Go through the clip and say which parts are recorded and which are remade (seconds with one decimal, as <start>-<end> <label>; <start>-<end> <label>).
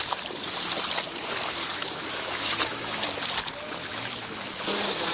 0.0-1.8 recorded; 1.8-3.0 remade; 3.0-3.9 recorded; 3.9-4.6 remade; 4.6-5.1 recorded